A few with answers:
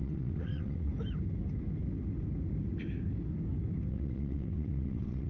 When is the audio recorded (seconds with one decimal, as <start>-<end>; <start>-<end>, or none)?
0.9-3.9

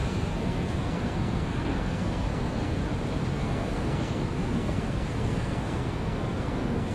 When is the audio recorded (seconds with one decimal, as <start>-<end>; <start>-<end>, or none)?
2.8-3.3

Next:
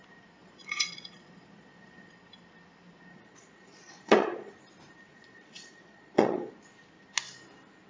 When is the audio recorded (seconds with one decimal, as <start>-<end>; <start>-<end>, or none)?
0.0-0.4; 2.1-3.1; 4.5-5.1; 6.5-7.9